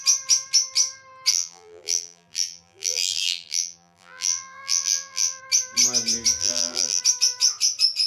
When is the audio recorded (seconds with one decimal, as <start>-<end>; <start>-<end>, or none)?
0.0-1.3; 5.4-6.4; 7.0-8.1